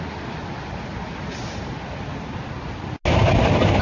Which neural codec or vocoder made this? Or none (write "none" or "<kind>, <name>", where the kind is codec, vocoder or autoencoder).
none